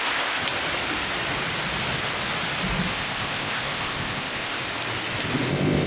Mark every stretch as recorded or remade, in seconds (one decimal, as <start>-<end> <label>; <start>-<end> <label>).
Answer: 0.0-0.4 remade; 0.4-2.9 recorded; 2.9-4.6 remade; 4.6-5.5 recorded; 5.5-5.9 remade